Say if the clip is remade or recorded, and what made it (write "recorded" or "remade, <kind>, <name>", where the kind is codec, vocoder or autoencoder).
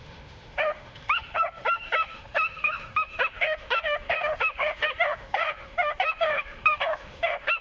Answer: remade, autoencoder, DAC-VAE